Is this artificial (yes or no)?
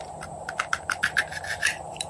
no